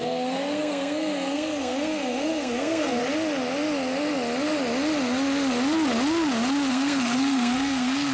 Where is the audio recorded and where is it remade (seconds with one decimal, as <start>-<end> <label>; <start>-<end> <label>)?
0.0-3.0 remade; 3.0-6.7 recorded; 6.7-8.1 remade